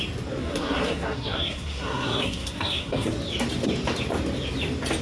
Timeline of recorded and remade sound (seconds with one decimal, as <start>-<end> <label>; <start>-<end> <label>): 0.0-0.4 recorded; 0.4-3.1 remade; 3.1-5.0 recorded